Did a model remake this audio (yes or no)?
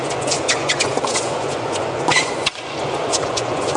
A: yes